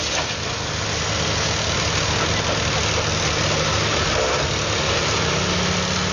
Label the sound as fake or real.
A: real